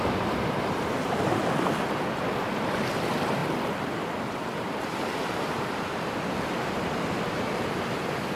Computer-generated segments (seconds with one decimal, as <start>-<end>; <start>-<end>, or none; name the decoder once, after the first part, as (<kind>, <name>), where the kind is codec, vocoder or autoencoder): none